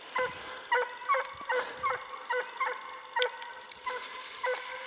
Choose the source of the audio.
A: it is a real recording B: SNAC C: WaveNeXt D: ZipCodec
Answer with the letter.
A